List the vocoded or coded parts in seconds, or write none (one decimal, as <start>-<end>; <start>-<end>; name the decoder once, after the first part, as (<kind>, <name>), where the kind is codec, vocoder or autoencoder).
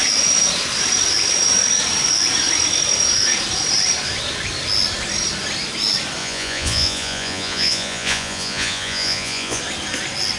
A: 6.2-9.6 (vocoder, Vocos)